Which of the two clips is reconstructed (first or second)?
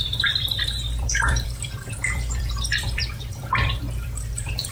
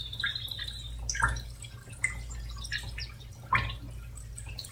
first